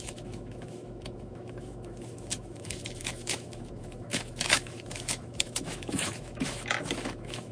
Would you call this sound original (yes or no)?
no